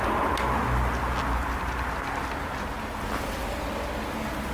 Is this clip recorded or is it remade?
recorded